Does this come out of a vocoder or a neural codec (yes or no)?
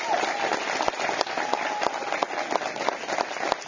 no